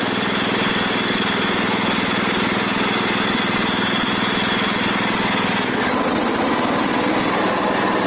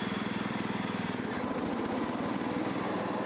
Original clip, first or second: first